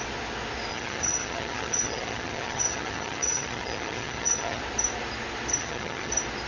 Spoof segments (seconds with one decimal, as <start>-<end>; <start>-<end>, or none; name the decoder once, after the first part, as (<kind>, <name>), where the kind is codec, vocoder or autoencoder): 0.7-4.6 (vocoder, HiFi-GAN); 5.6-6.1